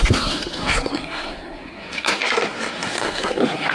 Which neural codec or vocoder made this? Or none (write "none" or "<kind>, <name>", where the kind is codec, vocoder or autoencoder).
codec, SNAC